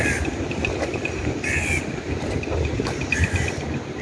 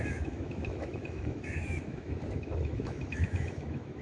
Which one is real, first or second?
first